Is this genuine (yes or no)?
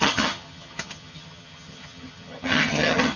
no